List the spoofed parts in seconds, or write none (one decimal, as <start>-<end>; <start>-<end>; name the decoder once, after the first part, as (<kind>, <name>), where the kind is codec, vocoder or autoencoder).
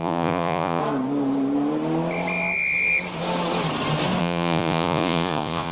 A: 0.0-0.8 (vocoder, Vocos); 4.2-5.7